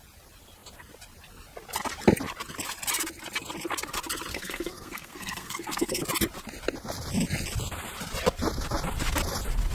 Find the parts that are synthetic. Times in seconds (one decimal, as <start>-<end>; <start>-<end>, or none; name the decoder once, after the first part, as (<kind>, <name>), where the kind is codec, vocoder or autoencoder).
4.3-6.0 (codec, SNAC)